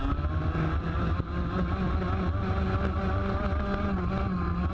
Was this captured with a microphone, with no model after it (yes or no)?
yes